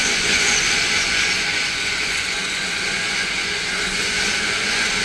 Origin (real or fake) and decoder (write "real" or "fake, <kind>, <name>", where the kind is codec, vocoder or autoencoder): fake, vocoder, Vocos